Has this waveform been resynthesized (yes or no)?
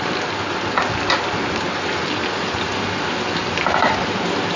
no